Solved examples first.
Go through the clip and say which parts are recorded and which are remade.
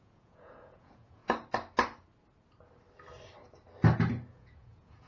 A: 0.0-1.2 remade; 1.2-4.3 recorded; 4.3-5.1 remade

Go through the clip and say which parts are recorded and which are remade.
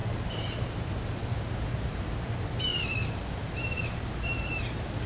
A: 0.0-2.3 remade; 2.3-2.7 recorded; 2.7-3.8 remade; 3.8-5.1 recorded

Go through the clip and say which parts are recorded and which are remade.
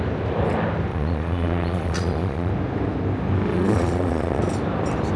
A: 0.0-0.9 recorded; 0.9-2.5 remade; 2.5-3.5 recorded; 3.5-4.4 remade; 4.4-5.2 recorded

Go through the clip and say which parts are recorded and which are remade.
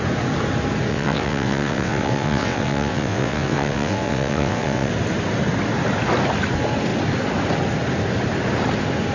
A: 0.0-0.9 recorded; 0.9-4.9 remade; 4.9-9.1 recorded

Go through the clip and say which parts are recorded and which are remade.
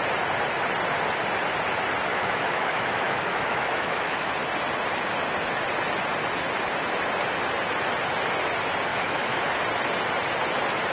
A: 0.0-2.1 recorded; 2.1-4.3 remade; 4.3-8.9 recorded; 8.9-9.4 remade; 9.4-10.9 recorded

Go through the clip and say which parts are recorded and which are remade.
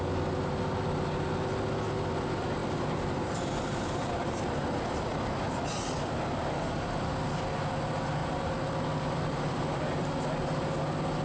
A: 0.0-2.6 recorded; 2.6-7.1 remade; 7.1-8.2 recorded; 8.2-11.2 remade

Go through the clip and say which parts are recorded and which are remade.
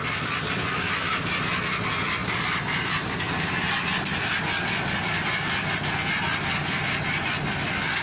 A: 0.0-8.0 recorded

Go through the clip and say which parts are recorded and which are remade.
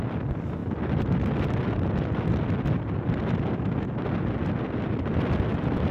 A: 0.0-5.9 recorded